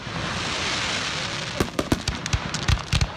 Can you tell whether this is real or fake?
real